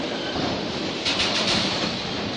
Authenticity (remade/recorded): remade